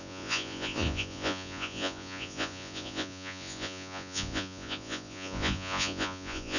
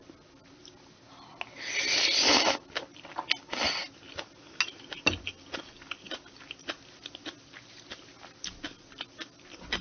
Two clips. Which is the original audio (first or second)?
second